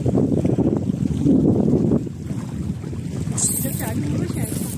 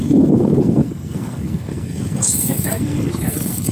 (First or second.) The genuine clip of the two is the first